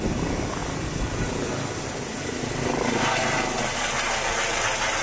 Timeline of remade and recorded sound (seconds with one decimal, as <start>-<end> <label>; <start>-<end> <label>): 0.0-5.0 recorded